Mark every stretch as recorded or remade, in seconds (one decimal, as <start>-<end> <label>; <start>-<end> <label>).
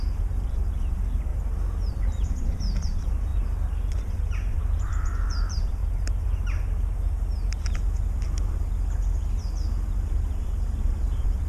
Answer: 0.0-1.3 remade; 1.3-1.9 recorded; 1.9-3.3 remade; 3.3-4.0 recorded; 4.0-5.8 remade; 5.8-10.1 recorded; 10.1-11.5 remade